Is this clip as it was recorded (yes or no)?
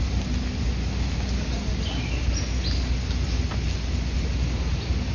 yes